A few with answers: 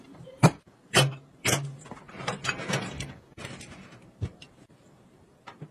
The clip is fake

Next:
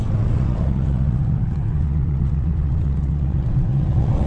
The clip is fake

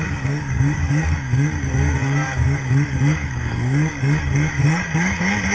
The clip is fake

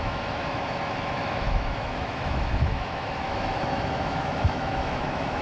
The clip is fake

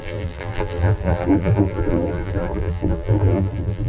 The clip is fake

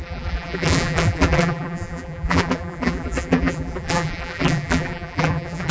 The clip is fake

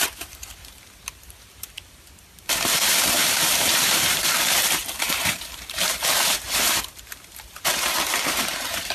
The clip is fake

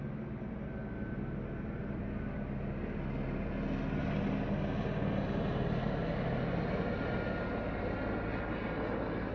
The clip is real